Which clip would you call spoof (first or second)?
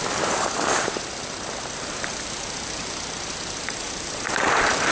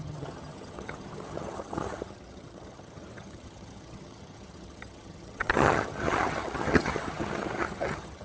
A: second